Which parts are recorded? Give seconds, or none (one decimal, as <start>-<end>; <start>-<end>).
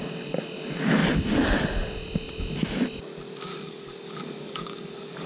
0.0-3.5